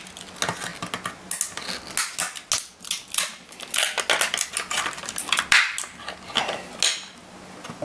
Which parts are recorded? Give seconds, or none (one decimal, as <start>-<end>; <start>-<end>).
0.0-7.8